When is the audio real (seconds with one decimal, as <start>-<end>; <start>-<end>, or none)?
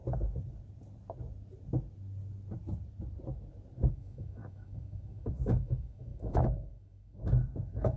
0.0-3.9